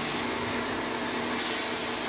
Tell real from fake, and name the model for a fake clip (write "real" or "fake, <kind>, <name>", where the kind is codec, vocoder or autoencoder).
real